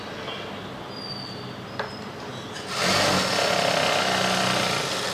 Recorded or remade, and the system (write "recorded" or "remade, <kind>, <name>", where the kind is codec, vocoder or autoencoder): recorded